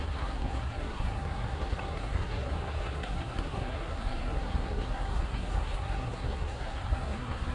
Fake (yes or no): yes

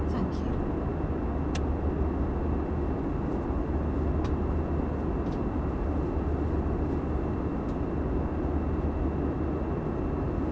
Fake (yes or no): no